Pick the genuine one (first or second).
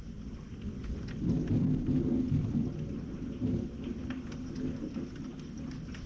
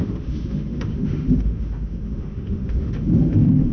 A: first